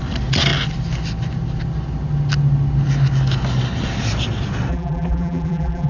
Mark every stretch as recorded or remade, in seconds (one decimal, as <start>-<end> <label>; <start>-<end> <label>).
0.0-4.7 recorded; 4.7-5.9 remade